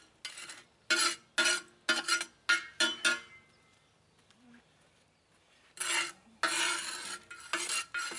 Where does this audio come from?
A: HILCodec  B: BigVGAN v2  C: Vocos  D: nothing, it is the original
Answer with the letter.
D